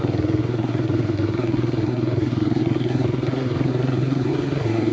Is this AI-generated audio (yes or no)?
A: yes